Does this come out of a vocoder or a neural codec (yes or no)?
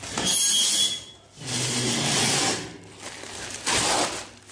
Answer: no